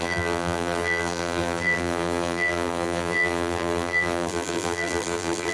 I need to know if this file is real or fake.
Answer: fake